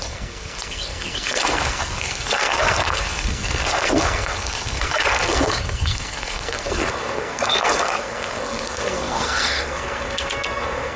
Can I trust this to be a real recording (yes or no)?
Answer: no